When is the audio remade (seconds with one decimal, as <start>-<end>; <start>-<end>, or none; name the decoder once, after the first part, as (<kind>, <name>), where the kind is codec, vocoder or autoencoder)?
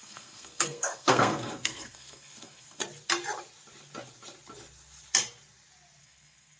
0.0-2.8 (codec, SNAC); 6.0-6.6